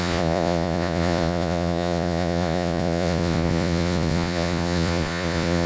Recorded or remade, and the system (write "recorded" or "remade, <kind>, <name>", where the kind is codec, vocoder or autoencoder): remade, vocoder, Vocos